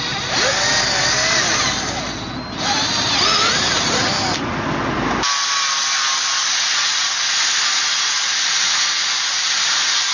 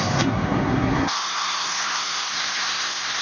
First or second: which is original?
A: first